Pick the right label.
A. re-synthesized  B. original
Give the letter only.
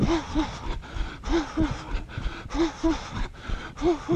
B